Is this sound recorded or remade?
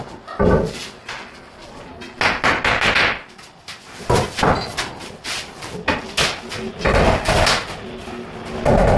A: recorded